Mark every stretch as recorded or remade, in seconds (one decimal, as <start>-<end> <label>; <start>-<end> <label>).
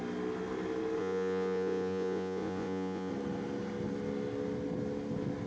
0.0-1.0 recorded; 1.0-3.1 remade; 3.1-5.5 recorded